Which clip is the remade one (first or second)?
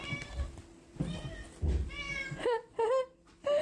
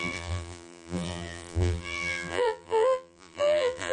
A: second